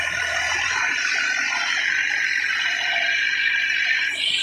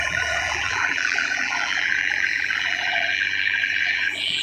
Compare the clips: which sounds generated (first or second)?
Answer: second